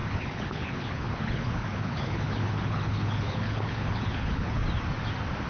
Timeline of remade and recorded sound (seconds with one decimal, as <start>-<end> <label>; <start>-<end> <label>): 0.0-4.6 remade; 4.6-5.5 recorded